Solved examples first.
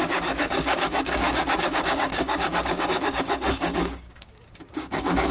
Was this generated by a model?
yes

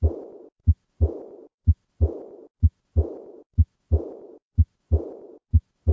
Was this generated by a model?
no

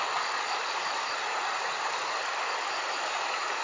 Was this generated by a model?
no